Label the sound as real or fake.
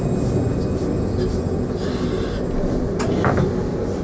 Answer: real